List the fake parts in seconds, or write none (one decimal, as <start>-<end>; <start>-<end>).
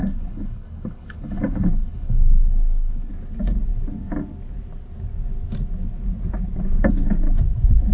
0.0-3.1